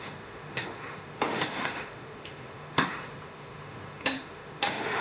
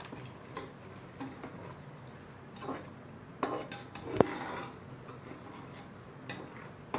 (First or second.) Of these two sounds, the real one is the second